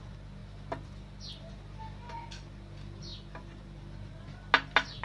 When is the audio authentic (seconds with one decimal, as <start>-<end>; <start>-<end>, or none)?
0.0-5.0

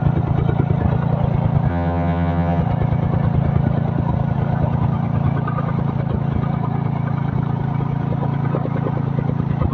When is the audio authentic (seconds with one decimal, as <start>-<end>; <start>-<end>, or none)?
0.0-1.7; 2.6-9.7